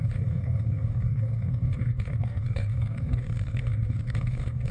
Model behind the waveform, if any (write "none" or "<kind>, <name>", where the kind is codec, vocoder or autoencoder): codec, DAC